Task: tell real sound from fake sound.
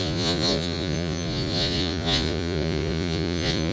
fake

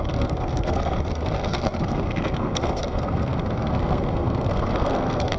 fake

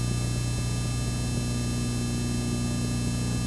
real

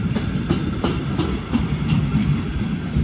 real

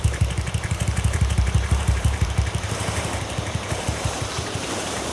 fake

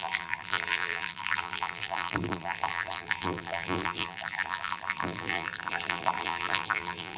fake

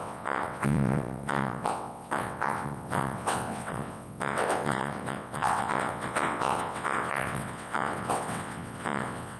fake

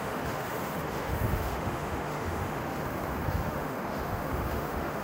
fake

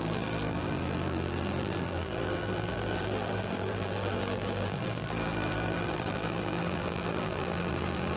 fake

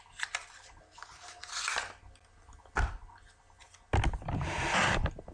real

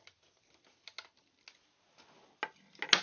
real